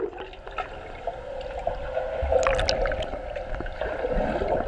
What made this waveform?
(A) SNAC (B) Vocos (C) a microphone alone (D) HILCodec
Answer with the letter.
C